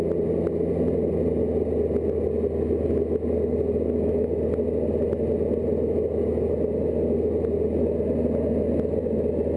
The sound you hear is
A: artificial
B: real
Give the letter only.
B